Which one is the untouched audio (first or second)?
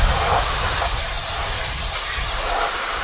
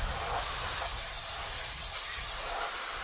second